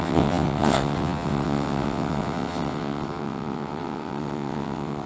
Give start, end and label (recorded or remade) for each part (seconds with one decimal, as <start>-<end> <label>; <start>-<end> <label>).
0.0-5.1 remade